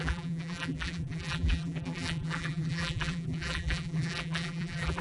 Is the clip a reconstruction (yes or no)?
yes